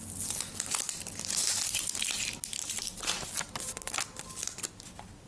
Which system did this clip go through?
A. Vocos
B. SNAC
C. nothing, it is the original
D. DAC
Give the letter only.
C